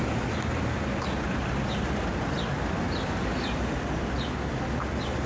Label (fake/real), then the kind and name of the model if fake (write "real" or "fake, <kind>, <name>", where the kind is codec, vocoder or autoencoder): real